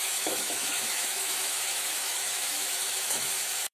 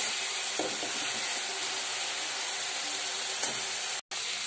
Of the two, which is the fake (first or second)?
first